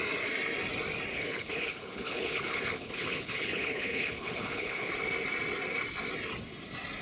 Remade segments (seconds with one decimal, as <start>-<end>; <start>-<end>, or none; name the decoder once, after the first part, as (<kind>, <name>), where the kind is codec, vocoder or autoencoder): 1.1-4.9 (codec, HILCodec)